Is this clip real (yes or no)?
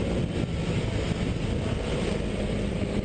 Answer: yes